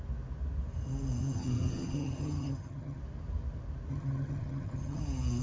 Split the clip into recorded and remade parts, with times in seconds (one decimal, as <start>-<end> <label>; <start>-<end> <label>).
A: 0.0-1.2 recorded; 1.2-3.0 remade; 3.0-3.9 recorded; 3.9-5.0 remade; 5.0-5.4 recorded